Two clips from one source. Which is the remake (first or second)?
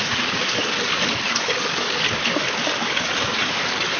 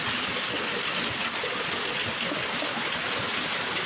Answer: first